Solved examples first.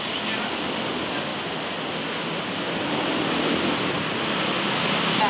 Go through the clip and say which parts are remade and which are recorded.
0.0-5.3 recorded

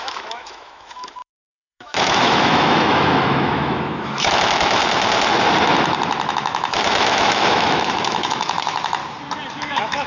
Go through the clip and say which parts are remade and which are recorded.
0.0-4.8 remade; 4.8-6.3 recorded; 6.3-9.0 remade; 9.0-9.5 recorded; 9.5-10.1 remade

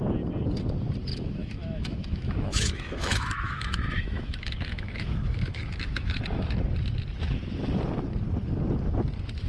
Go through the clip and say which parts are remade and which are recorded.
0.0-1.1 recorded; 1.1-6.2 remade; 6.2-9.5 recorded

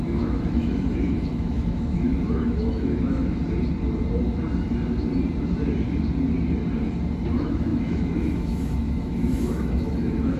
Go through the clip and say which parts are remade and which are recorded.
0.0-3.4 remade; 3.4-7.3 recorded; 7.3-10.4 remade